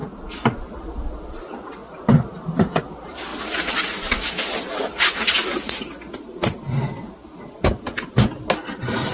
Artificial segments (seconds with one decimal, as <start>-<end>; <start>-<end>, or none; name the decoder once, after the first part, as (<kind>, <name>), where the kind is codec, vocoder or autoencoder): none